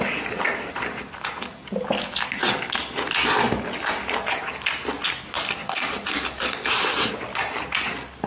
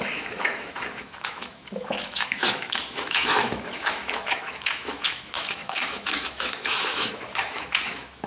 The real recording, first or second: first